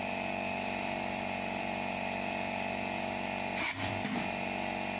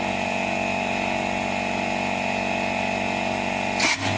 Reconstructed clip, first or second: first